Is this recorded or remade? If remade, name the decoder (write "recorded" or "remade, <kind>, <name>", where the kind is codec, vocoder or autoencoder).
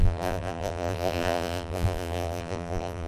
remade, vocoder, BigVGAN v2